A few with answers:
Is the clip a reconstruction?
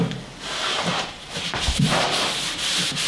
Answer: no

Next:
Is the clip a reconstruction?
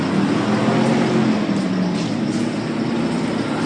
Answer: no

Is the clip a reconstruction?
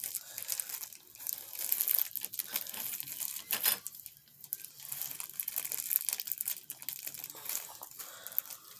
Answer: no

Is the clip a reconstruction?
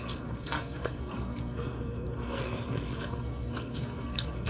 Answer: yes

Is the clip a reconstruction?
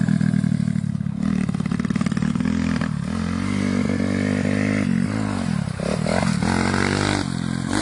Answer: no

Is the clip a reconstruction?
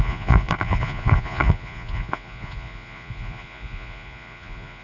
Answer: yes